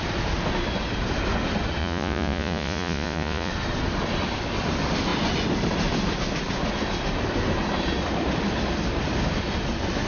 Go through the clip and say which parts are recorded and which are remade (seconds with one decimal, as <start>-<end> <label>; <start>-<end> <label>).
0.0-1.8 recorded; 1.8-3.5 remade; 3.5-10.1 recorded